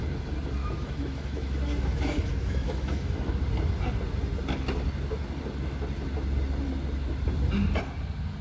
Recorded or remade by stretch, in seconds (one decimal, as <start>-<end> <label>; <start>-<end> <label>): 0.0-0.6 recorded; 0.6-3.3 remade; 3.3-8.4 recorded